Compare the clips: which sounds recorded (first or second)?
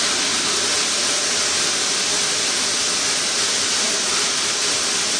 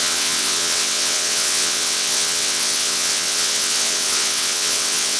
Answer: first